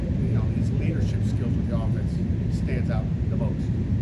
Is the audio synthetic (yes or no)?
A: no